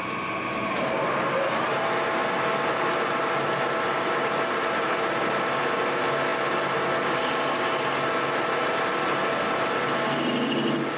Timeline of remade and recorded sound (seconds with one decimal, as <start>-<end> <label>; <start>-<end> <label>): 0.0-11.0 recorded